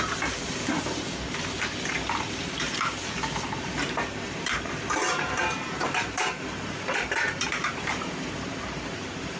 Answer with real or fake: fake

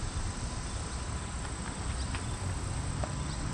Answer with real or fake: real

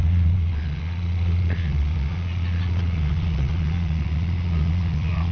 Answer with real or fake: fake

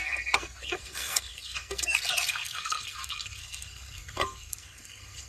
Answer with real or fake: fake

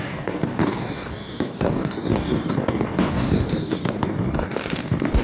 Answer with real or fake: fake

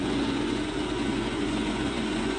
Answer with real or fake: fake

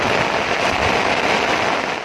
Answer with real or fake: real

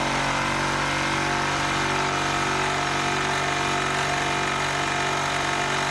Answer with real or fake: real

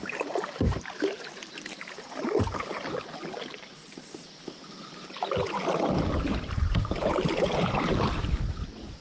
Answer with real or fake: real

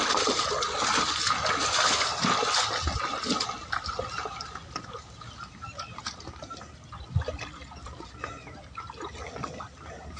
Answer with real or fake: real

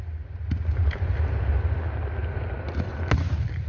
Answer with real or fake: real